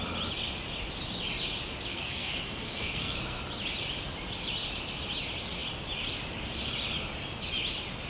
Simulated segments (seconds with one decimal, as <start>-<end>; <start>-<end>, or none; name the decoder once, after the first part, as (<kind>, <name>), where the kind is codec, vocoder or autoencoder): 1.9-3.4 (codec, SNAC)